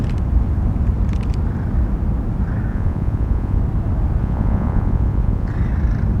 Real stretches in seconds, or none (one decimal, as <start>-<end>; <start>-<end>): 0.0-2.7; 3.6-4.2; 5.5-6.2